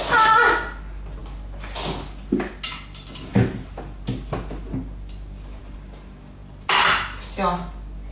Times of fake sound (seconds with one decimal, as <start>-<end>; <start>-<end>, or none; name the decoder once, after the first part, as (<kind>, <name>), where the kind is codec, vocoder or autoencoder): none